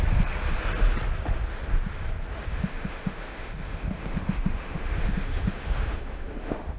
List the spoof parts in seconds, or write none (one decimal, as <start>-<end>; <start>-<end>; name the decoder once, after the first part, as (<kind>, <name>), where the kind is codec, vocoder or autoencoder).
2.5-6.8 (autoencoder, DAC-VAE)